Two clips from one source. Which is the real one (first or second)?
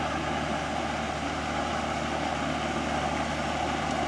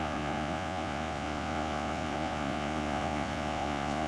first